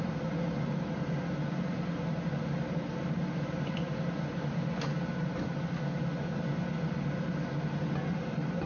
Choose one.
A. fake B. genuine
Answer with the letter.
B